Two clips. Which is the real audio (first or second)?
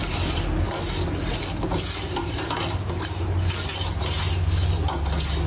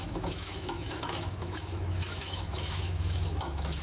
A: first